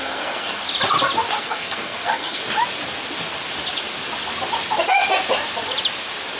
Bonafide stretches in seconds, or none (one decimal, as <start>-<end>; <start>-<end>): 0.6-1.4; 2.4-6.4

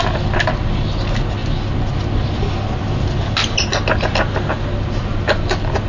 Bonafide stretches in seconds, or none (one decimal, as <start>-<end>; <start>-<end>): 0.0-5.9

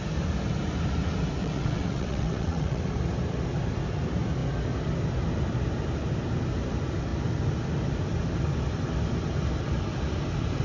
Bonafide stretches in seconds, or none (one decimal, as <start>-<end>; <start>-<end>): 0.0-1.4; 2.8-10.6

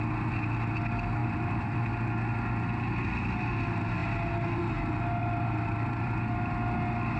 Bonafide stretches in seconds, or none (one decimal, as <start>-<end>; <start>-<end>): 0.0-1.2; 1.8-5.2; 6.5-7.2